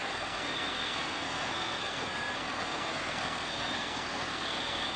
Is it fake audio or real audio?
fake